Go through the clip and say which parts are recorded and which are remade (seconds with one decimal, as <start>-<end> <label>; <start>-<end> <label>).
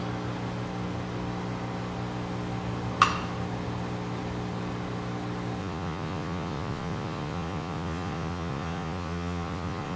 0.0-5.6 recorded; 5.6-10.0 remade